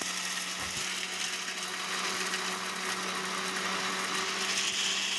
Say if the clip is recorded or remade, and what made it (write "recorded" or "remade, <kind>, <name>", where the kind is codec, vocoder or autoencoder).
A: recorded